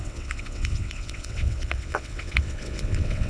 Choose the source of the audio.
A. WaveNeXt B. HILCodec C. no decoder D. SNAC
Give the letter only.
A